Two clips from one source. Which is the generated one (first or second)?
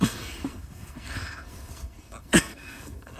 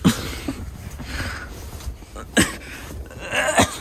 first